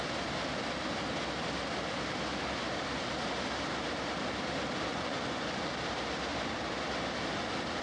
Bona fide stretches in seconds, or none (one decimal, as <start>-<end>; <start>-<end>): 0.0-4.9; 5.7-7.8